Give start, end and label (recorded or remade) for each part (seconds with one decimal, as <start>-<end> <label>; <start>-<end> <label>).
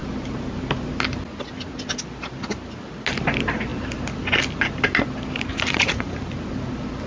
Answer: 0.0-5.5 recorded; 5.5-6.2 remade; 6.2-7.1 recorded